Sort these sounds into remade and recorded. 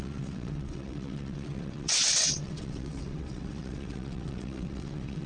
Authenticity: remade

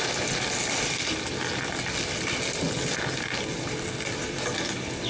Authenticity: recorded